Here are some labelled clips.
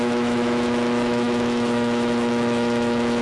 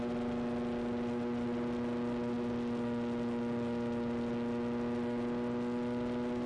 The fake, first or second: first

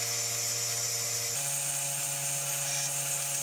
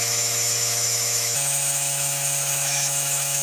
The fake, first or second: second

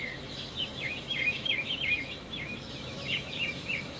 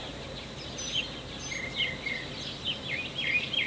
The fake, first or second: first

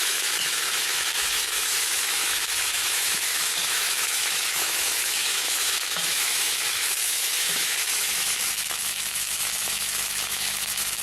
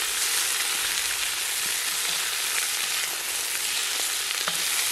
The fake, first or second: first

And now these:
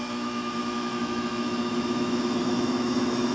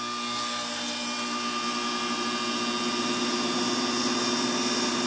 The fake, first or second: first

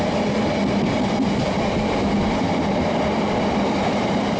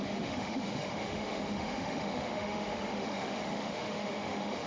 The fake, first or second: second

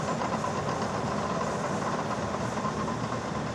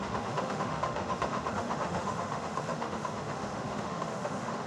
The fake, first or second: second